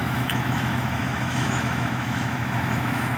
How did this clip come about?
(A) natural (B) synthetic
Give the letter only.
B